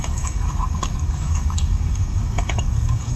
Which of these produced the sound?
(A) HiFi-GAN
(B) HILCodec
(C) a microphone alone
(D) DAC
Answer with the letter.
D